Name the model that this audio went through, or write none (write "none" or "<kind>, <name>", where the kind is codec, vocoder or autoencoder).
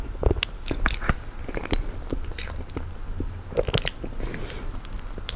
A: vocoder, BigVGAN v2